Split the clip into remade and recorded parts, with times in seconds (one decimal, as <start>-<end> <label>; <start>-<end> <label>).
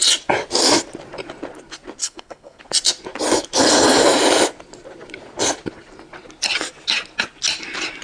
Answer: 0.0-2.0 recorded; 2.0-2.6 remade; 2.6-8.0 recorded